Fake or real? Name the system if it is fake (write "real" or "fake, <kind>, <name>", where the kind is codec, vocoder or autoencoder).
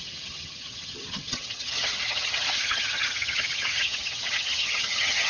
fake, vocoder, HiFi-GAN